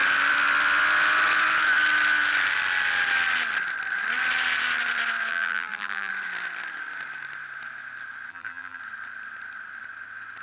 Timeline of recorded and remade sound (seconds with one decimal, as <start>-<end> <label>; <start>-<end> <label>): 0.0-5.3 recorded; 5.3-6.1 remade; 6.1-8.3 recorded; 8.3-8.8 remade; 8.8-10.4 recorded